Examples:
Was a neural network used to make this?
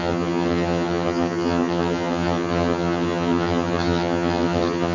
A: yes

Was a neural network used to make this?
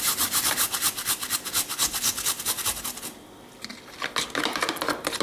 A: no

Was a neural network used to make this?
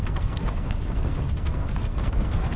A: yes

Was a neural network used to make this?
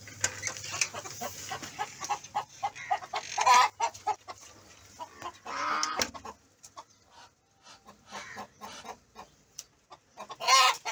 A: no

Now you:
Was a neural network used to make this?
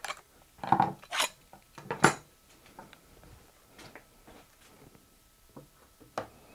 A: no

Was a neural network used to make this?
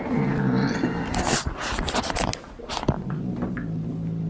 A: no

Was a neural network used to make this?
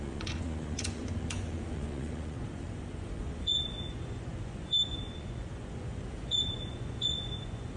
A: yes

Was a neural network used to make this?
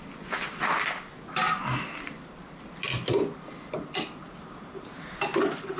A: no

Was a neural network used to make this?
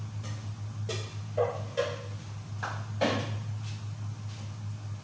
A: no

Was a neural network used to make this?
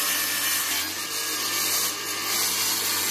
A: no